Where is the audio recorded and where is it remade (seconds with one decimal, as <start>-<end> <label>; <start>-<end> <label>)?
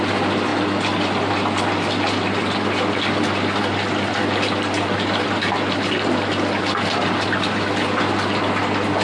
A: 0.0-9.0 recorded